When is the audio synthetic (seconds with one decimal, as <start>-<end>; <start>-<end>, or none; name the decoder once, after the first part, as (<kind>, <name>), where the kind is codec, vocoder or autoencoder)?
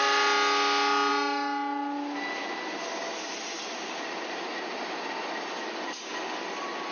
none